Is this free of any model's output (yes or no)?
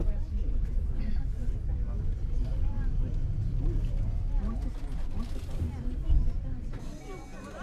yes